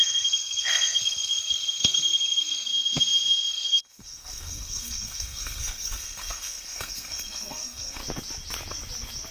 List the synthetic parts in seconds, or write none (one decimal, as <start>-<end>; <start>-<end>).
0.0-2.7; 3.5-8.0